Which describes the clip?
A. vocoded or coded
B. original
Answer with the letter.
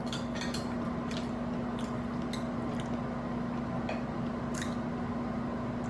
B